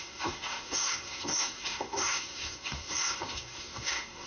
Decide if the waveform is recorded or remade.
remade